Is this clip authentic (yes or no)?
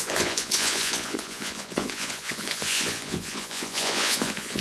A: no